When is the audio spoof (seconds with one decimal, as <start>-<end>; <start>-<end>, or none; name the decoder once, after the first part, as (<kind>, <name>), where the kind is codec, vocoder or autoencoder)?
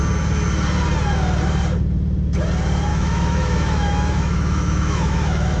2.9-5.6 (autoencoder, DAC-VAE)